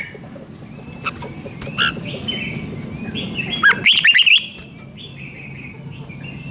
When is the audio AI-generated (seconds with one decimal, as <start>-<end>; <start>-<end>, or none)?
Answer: none